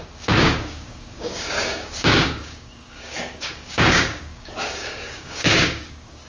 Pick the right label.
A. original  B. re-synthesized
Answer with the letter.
B